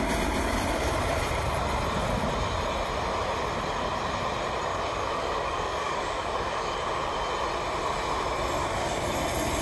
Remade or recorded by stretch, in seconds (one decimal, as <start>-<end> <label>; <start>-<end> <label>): 0.0-4.7 recorded; 4.7-6.7 remade; 6.7-8.6 recorded; 8.6-9.1 remade; 9.1-9.6 recorded